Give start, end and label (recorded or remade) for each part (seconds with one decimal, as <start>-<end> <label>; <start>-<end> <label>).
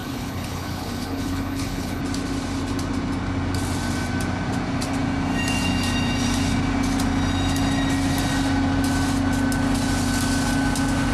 0.0-2.0 remade; 2.0-11.1 recorded